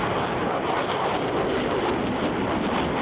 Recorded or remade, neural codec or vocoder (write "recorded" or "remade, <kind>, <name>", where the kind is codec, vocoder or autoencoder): recorded